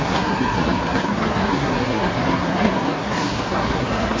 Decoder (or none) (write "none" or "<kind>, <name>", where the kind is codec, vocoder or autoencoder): codec, SNAC